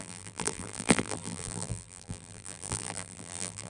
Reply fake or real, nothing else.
fake